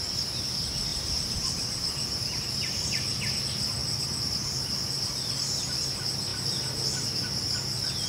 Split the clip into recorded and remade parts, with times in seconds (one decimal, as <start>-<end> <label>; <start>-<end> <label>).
0.0-0.9 recorded; 0.9-3.0 remade; 3.0-8.1 recorded